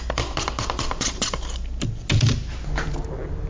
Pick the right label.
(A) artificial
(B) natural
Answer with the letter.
B